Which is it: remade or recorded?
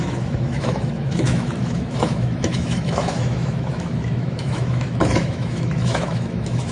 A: remade